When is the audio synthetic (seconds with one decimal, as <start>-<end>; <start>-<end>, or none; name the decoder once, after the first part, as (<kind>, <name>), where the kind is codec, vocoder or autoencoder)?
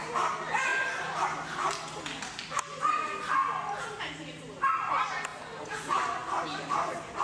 none